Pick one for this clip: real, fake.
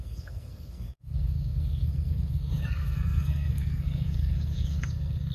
fake